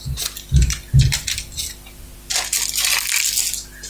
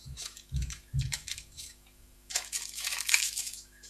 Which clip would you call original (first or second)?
first